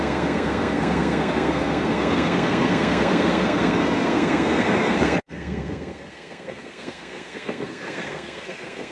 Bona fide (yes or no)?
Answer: no